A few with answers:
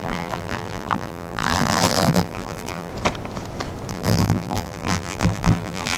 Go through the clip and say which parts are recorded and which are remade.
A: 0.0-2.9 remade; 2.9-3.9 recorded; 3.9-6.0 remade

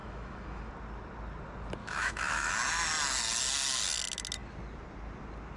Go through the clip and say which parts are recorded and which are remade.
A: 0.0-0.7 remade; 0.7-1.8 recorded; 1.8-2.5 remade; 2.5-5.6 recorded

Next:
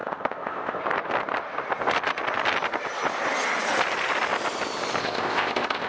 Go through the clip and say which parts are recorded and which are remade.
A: 0.0-0.8 remade; 0.8-5.0 recorded; 5.0-5.9 remade